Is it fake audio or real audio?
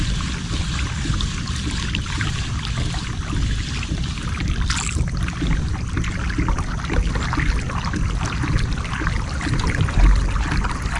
real